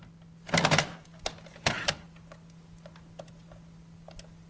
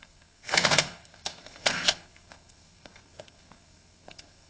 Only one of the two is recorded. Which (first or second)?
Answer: first